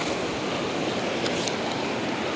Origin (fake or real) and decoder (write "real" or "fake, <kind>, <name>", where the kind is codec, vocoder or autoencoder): real